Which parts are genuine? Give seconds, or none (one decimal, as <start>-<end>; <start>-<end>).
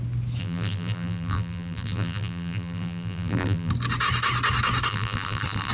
0.0-0.4; 3.7-4.9